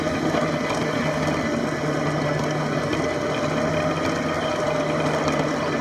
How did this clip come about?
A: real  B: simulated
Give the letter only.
A